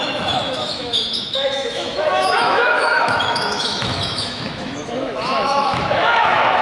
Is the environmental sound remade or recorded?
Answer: remade